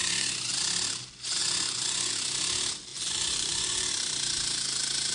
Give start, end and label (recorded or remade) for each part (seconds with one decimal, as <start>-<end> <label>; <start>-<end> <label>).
0.0-0.5 remade; 0.5-1.4 recorded; 1.4-2.1 remade; 2.1-2.9 recorded; 2.9-3.9 remade; 3.9-5.1 recorded